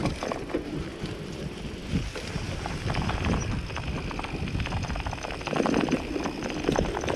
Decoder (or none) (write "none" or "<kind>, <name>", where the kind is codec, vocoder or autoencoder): none